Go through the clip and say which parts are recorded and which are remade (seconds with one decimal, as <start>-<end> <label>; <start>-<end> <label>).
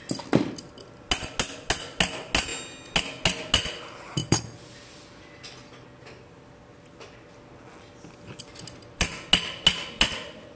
0.0-10.6 recorded